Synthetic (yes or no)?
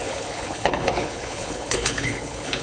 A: yes